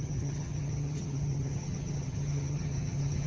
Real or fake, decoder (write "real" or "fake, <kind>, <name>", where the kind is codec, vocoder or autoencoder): fake, vocoder, HiFi-GAN